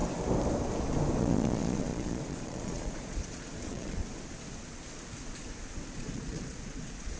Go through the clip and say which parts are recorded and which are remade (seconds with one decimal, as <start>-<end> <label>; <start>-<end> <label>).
0.0-1.2 recorded; 1.2-4.0 remade; 4.0-5.9 recorded; 5.9-7.2 remade